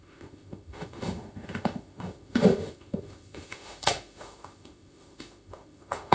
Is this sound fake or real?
fake